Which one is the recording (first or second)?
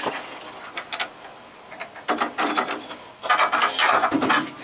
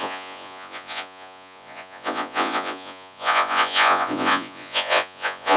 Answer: first